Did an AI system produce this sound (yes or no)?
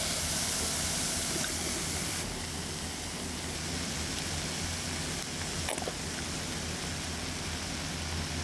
no